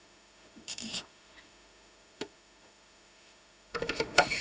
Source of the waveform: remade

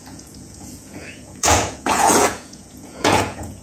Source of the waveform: remade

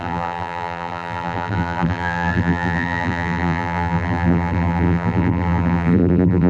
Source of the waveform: remade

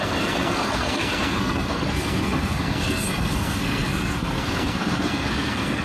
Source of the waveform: remade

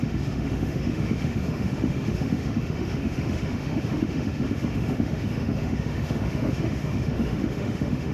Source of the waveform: remade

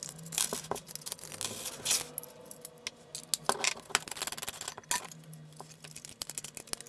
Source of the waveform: recorded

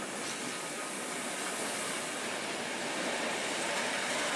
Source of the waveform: recorded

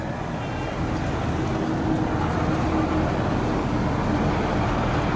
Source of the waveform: recorded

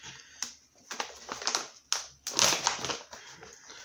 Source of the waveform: recorded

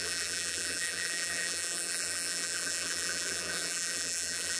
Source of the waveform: remade